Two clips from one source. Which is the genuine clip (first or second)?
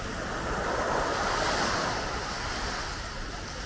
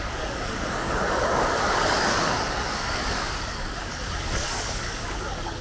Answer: first